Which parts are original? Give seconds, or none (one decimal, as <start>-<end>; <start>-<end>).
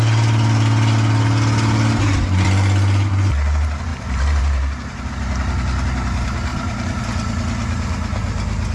0.0-3.9; 5.1-6.5; 7.0-8.7